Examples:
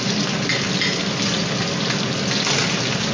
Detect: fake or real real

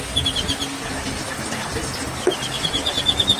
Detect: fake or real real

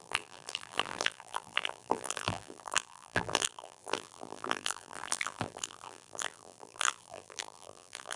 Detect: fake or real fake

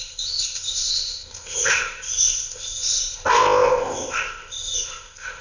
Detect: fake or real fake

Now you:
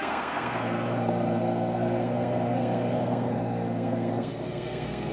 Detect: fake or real fake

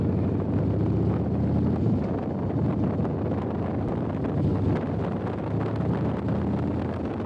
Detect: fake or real real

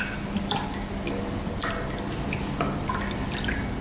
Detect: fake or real real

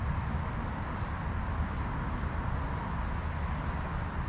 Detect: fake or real real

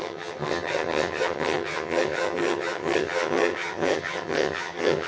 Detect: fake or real fake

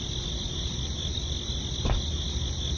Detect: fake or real real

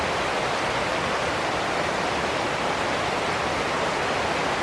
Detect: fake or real real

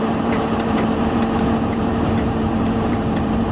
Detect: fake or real fake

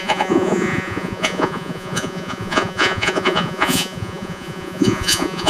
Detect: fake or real fake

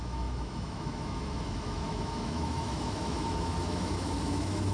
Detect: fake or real fake